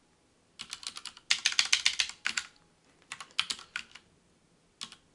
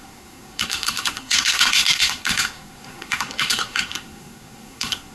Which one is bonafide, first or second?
first